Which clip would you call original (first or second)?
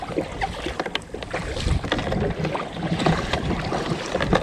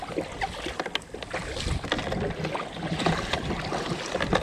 second